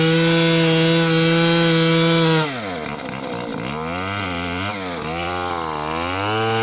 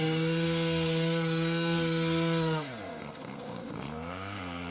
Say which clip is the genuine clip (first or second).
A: first